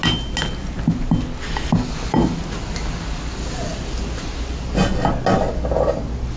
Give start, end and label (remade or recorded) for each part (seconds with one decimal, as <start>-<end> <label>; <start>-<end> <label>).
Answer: 0.0-6.4 recorded